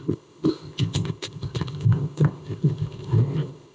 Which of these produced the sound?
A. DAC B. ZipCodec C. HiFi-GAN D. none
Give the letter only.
B